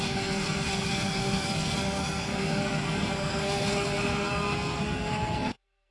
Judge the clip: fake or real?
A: fake